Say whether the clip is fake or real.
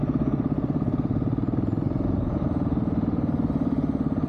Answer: real